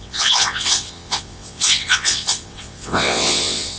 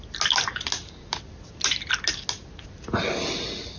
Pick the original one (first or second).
second